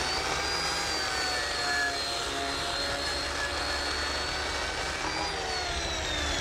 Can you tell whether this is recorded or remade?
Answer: recorded